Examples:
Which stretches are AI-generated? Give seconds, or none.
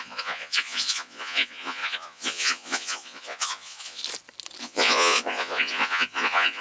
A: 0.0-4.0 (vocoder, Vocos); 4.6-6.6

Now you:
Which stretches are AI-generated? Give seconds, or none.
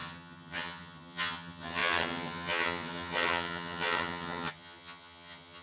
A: 0.0-5.6 (vocoder, HiFi-GAN)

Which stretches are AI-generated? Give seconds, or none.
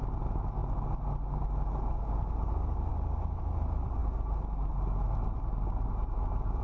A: none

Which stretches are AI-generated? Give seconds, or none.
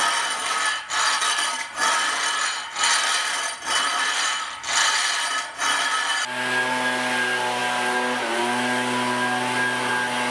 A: none